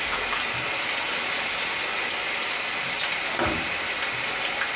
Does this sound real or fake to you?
real